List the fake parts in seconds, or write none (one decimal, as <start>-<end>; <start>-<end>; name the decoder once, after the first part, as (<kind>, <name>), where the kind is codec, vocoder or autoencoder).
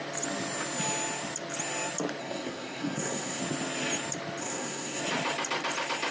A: 2.2-3.4 (codec, SNAC); 4.4-5.0